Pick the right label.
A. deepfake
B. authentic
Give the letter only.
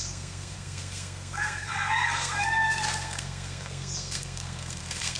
A